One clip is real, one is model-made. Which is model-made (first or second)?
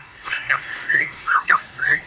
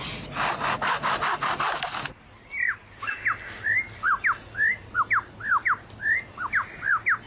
first